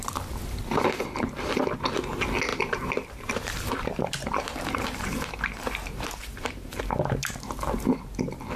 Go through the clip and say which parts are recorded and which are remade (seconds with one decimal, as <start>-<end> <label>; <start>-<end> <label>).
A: 0.0-2.5 recorded; 2.5-6.8 remade; 6.8-8.6 recorded